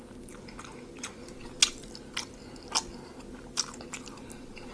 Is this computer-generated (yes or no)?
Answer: no